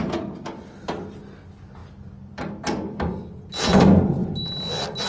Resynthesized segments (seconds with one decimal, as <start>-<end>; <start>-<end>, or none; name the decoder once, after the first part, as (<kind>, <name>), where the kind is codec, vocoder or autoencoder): 1.8-3.2 (vocoder, BigVGAN v2)